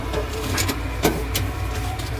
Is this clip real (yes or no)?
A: no